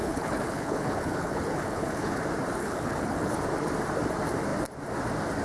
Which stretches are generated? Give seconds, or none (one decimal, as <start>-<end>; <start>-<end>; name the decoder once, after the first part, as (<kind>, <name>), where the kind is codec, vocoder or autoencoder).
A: 0.0-2.2 (codec, HILCodec); 2.6-3.4